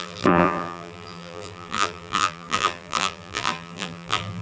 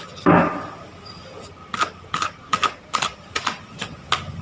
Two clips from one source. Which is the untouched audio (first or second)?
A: second